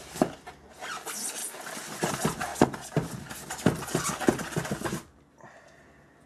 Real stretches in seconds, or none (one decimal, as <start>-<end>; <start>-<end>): 0.0-6.3